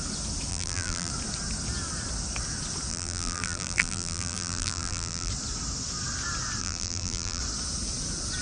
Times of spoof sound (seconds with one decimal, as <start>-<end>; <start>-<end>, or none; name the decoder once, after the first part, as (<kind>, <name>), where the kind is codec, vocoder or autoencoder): 0.5-1.1 (vocoder, BigVGAN v2); 2.9-5.3; 6.6-7.4